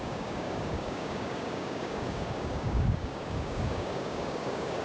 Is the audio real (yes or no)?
no